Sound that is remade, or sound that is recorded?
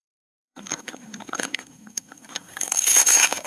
remade